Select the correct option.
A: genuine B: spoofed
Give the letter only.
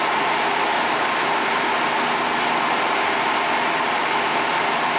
A